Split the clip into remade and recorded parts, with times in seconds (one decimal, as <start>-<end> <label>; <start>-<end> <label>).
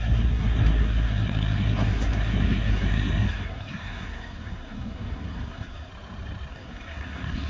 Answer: 0.0-5.9 remade; 5.9-6.5 recorded; 6.5-7.5 remade